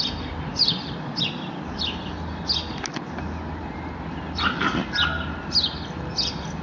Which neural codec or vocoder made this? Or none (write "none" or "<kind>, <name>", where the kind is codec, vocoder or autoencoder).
none